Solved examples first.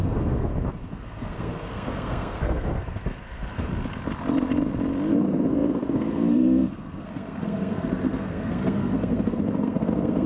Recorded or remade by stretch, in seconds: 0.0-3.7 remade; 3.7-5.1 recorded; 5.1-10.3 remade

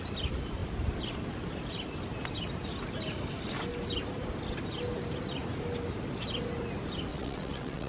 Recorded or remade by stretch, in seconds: 0.0-7.1 recorded; 7.1-7.9 remade

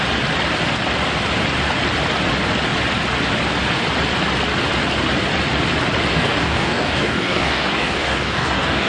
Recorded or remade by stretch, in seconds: 0.0-6.1 recorded; 6.1-8.9 remade

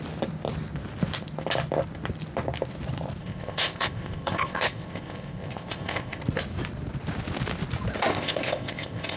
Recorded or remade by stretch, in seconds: 0.0-3.2 recorded; 3.2-6.2 remade; 6.2-8.1 recorded; 8.1-9.2 remade

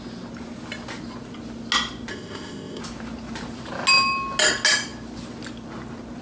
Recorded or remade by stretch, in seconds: 0.0-2.1 recorded; 2.1-2.8 remade; 2.8-6.2 recorded